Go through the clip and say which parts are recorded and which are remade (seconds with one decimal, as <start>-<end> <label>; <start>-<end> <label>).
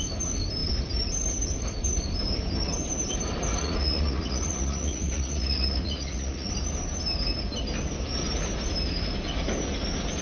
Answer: 0.0-3.5 recorded; 3.5-6.5 remade; 6.5-10.2 recorded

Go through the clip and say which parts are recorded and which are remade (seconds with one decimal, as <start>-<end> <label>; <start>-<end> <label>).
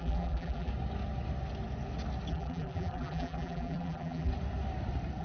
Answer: 0.0-0.7 remade; 0.7-2.3 recorded; 2.3-4.3 remade; 4.3-5.2 recorded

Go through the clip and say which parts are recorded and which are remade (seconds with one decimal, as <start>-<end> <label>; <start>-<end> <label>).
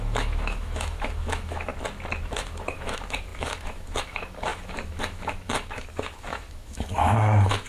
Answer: 0.0-1.7 remade; 1.7-2.2 recorded; 2.2-7.7 remade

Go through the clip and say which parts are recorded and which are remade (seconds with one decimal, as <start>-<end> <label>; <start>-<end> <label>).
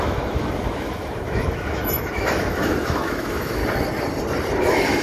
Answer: 0.0-3.6 remade; 3.6-4.6 recorded; 4.6-5.0 remade